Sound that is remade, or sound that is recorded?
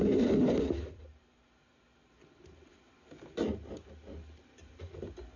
recorded